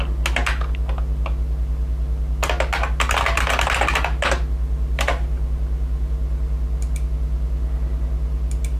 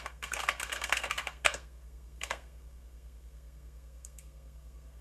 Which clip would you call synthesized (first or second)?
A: second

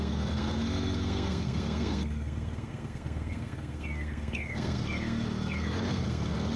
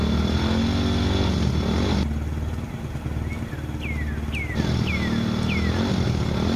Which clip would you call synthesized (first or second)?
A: first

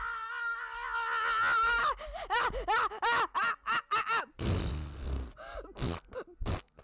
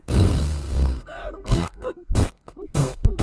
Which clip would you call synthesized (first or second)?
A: second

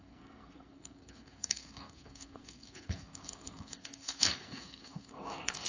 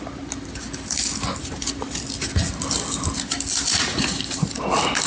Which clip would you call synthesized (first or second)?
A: first